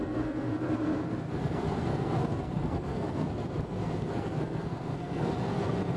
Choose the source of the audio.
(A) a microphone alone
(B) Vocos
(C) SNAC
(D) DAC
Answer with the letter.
C